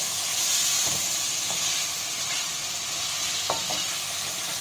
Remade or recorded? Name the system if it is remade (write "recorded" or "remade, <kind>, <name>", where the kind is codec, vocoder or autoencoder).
recorded